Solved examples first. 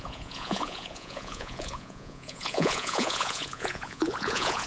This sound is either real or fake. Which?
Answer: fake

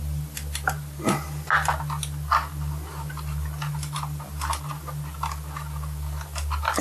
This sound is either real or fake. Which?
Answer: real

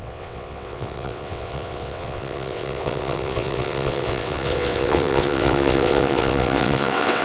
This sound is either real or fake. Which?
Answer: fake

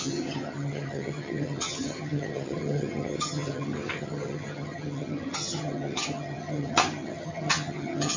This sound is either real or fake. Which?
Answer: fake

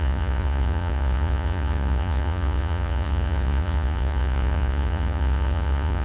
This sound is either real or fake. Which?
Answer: fake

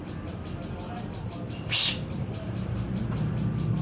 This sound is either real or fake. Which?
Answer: real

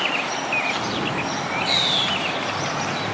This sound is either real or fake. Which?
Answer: real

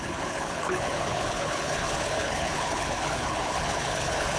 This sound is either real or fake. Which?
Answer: fake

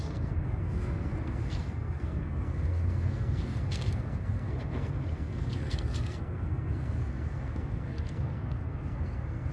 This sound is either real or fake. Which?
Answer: fake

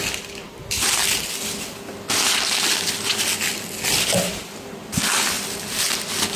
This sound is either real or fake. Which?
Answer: real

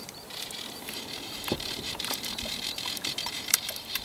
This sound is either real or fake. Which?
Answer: fake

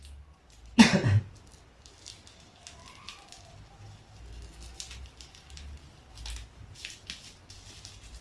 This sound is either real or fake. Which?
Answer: real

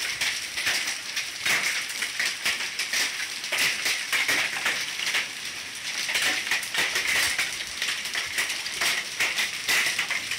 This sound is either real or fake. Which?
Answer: fake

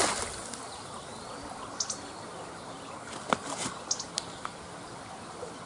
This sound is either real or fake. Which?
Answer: real